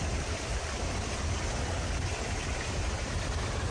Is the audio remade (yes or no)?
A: no